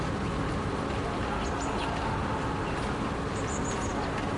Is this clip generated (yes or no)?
no